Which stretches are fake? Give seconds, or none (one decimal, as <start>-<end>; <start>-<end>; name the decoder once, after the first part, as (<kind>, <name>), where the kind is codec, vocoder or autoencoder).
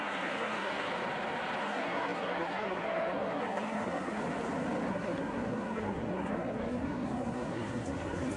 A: 0.0-0.9 (codec, SNAC); 1.6-4.2; 4.9-8.4